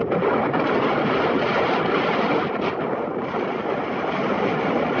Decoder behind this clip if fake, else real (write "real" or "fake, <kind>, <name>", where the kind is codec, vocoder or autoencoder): real